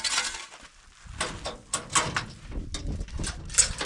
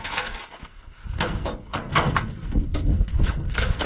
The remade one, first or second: second